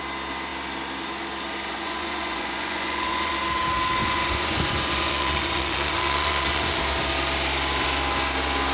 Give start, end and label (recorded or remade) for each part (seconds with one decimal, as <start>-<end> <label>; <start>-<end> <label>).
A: 0.0-1.7 recorded; 1.7-3.3 remade; 3.3-4.0 recorded; 4.0-6.8 remade; 6.8-8.7 recorded

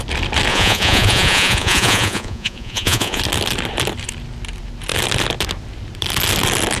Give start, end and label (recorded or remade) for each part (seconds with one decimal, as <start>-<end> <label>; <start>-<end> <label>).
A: 0.0-0.5 recorded; 0.5-3.2 remade; 3.2-6.8 recorded

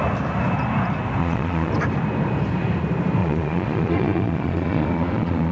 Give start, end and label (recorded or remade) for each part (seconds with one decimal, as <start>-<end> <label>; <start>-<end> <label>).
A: 0.0-1.2 recorded; 1.2-1.7 remade; 1.7-3.2 recorded; 3.2-5.5 remade

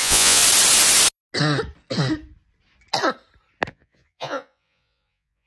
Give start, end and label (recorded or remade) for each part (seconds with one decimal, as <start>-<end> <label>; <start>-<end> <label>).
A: 0.0-0.4 remade; 0.4-3.7 recorded; 3.7-5.5 remade

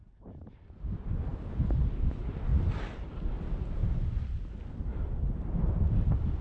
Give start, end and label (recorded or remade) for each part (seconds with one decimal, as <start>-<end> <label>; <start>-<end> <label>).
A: 0.0-6.4 recorded

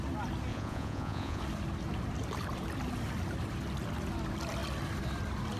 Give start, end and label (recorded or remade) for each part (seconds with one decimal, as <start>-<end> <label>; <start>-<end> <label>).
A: 0.0-0.5 recorded; 0.5-1.4 remade; 1.4-5.6 recorded

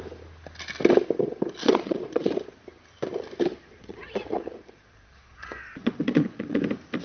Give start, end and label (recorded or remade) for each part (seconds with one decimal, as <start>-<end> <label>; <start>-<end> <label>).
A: 0.0-1.6 recorded; 1.6-2.3 remade; 2.3-3.5 recorded; 3.5-6.6 remade; 6.6-7.0 recorded

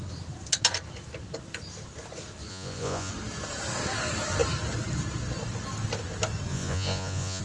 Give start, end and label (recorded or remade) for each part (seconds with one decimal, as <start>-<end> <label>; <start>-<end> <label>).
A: 0.0-2.5 recorded; 2.5-3.1 remade; 3.1-6.5 recorded; 6.5-7.4 remade